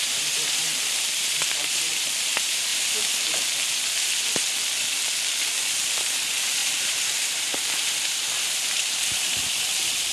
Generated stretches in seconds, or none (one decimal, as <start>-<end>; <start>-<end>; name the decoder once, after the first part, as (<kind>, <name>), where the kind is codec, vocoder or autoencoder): 0.0-2.7 (vocoder, BigVGAN v2); 5.9-10.1